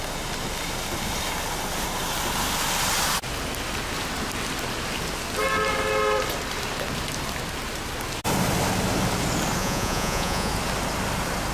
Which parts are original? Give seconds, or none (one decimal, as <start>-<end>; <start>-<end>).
0.0-9.6; 10.5-11.5